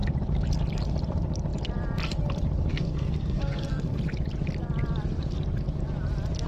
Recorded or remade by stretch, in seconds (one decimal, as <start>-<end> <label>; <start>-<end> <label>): 0.0-2.7 recorded; 2.7-4.0 remade; 4.0-6.5 recorded